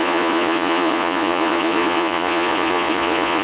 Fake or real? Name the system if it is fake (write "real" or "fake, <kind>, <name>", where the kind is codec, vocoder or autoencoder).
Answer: fake, vocoder, Vocos